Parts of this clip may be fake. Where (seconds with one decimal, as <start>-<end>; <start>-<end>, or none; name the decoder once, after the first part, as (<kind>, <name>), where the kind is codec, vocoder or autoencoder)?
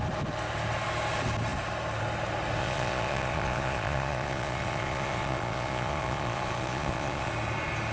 2.6-7.3 (vocoder, Vocos)